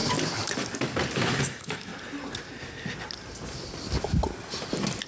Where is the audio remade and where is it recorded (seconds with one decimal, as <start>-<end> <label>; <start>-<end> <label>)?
0.0-1.4 recorded; 1.4-1.9 remade; 1.9-5.1 recorded